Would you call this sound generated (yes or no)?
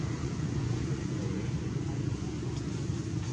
yes